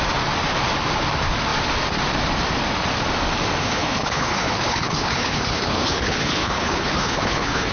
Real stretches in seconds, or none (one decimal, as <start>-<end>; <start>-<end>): 0.0-3.6